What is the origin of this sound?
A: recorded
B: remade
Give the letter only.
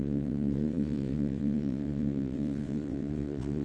B